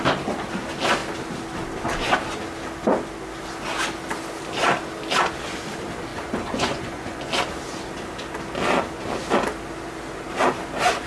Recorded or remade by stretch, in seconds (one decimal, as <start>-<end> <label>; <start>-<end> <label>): 0.0-6.1 recorded; 6.1-7.3 remade; 7.3-11.1 recorded